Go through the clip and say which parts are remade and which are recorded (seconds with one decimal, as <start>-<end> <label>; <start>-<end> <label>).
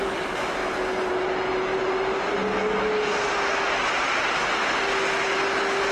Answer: 0.0-5.9 recorded